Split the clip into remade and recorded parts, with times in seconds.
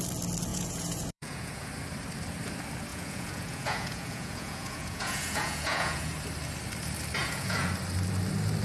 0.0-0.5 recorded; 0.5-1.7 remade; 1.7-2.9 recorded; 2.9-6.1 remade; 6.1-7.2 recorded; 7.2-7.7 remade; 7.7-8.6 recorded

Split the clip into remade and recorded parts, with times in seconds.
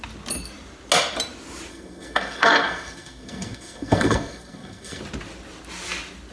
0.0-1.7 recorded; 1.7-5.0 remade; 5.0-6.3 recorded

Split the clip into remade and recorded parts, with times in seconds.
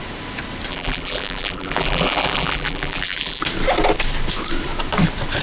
0.0-0.7 recorded; 0.7-3.4 remade; 3.4-5.4 recorded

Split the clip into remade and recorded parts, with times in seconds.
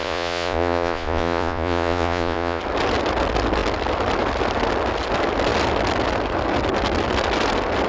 0.0-2.6 remade; 2.6-7.9 recorded